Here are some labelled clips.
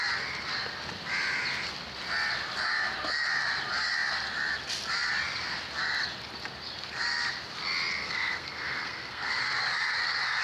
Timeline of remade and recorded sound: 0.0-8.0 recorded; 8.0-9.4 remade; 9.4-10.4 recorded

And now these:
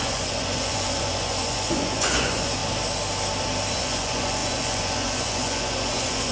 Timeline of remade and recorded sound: 0.0-2.6 remade; 2.6-3.7 recorded; 3.7-6.3 remade

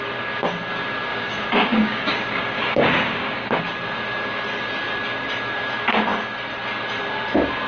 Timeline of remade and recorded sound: 0.0-1.1 recorded; 1.1-3.6 remade; 3.6-7.7 recorded

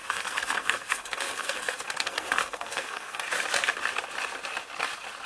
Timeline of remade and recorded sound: 0.0-3.2 remade; 3.2-5.3 recorded